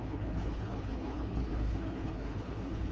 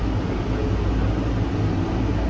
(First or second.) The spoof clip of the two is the first